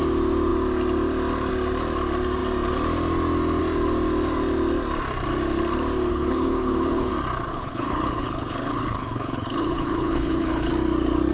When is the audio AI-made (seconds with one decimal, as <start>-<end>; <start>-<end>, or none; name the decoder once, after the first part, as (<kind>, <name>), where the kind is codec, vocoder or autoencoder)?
6.1-7.1 (codec, HILCodec); 7.5-10.7